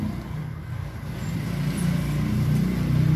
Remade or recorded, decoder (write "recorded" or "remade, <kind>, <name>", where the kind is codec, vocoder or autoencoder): recorded